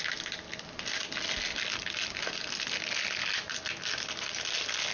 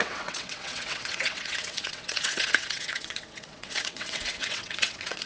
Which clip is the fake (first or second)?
second